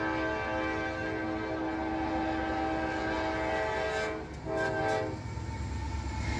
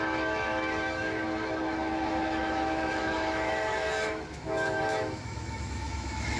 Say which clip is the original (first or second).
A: first